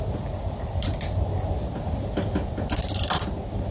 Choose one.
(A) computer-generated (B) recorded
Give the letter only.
B